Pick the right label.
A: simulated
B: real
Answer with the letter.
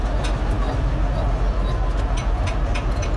B